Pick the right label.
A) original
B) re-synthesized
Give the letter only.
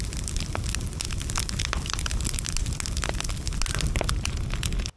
A